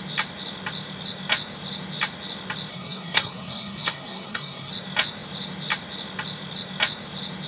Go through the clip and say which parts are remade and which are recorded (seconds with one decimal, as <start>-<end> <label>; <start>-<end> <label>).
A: 0.0-2.7 recorded; 2.7-4.7 remade; 4.7-7.5 recorded